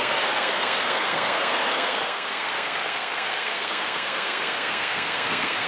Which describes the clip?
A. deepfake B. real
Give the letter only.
A